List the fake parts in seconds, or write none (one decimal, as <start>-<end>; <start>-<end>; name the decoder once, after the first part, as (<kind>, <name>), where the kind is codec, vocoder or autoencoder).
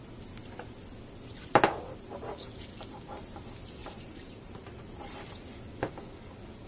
3.8-5.1 (vocoder, BigVGAN v2)